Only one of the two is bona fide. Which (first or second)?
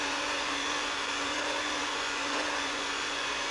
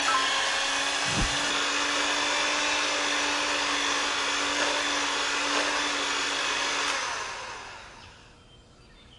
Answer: second